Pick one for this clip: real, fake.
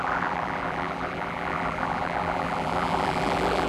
fake